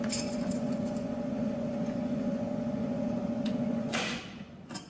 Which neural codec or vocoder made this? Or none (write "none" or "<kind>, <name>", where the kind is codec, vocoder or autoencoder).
vocoder, Vocos